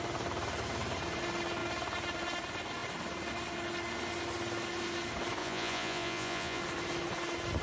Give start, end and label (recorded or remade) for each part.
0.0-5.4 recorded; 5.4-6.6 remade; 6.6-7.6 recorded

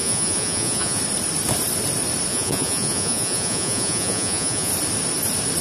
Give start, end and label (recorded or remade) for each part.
0.0-1.0 remade; 1.0-2.3 recorded; 2.3-4.7 remade; 4.7-5.6 recorded

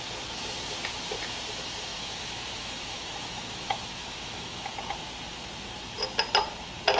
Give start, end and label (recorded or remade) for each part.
0.0-1.9 recorded; 1.9-4.7 remade; 4.7-7.0 recorded

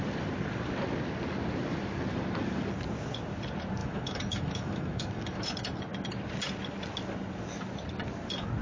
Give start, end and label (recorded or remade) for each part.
0.0-3.8 recorded; 3.8-5.5 remade; 5.5-8.6 recorded

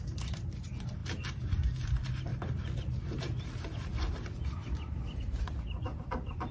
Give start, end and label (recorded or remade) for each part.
0.0-2.3 recorded; 2.3-3.7 remade; 3.7-4.6 recorded; 4.6-5.4 remade; 5.4-6.5 recorded

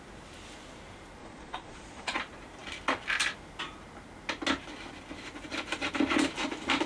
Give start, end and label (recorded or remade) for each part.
0.0-1.2 recorded; 1.2-2.2 remade; 2.2-6.9 recorded

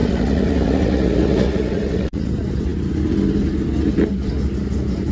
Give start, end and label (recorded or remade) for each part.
0.0-2.3 remade; 2.3-5.1 recorded

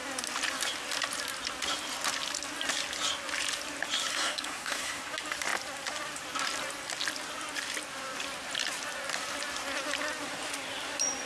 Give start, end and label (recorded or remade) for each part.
0.0-4.1 recorded; 4.1-5.0 remade; 5.0-11.3 recorded